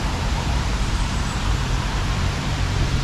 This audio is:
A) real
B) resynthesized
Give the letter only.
B